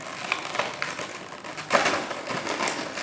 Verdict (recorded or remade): recorded